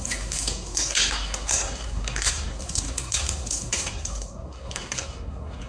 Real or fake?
fake